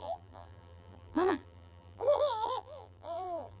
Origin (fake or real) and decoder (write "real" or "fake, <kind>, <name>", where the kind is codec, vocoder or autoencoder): fake, vocoder, BigVGAN v2